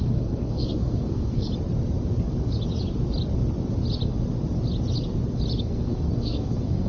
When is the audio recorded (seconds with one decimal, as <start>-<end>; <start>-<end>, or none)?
1.5-5.6